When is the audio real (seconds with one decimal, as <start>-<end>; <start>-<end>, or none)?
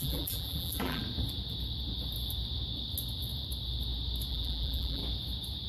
1.0-4.3; 5.0-5.7